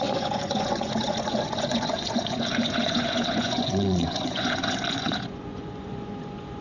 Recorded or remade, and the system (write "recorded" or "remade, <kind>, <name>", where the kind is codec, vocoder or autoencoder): remade, vocoder, Vocos